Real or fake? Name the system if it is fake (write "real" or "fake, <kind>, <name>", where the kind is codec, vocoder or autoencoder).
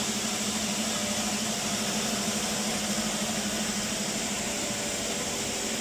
real